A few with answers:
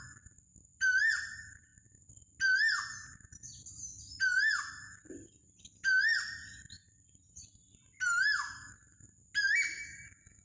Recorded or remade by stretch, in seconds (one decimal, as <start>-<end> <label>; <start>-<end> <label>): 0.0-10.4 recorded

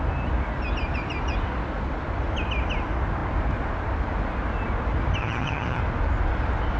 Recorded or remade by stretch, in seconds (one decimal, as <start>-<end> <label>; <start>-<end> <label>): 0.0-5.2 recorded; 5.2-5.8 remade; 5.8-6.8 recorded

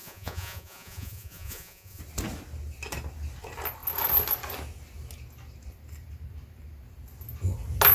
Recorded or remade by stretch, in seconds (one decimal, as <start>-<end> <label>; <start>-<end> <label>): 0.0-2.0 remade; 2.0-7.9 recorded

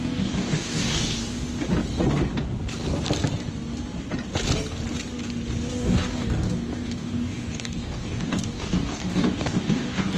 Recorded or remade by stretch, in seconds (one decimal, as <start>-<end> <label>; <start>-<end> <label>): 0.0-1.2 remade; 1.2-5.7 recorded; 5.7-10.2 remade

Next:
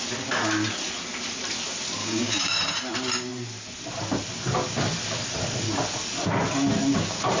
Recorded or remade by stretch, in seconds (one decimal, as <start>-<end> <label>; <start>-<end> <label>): 0.0-2.0 recorded; 2.0-2.6 remade; 2.6-7.4 recorded